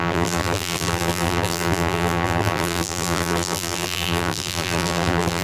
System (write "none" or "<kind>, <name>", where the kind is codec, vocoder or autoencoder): vocoder, BigVGAN v2